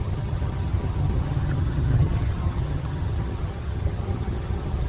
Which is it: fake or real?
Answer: fake